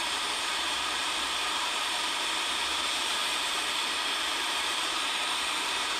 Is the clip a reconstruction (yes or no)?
yes